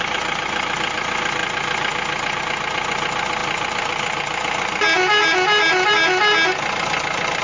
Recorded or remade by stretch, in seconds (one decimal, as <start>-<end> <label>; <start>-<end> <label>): 0.0-7.4 recorded